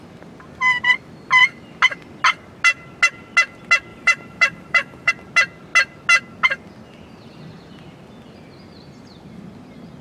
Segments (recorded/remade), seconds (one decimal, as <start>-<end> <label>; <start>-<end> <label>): 0.0-3.9 recorded; 3.9-5.1 remade; 5.1-10.0 recorded